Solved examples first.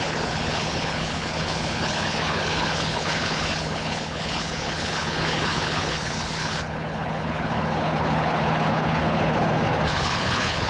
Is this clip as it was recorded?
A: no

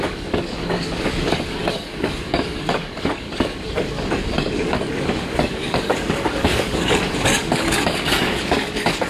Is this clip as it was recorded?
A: no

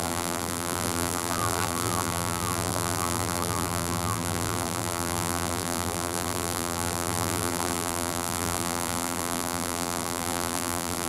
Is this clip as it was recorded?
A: no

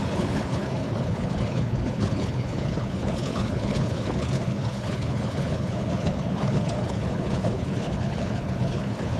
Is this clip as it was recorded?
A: no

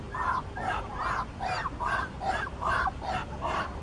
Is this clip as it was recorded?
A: yes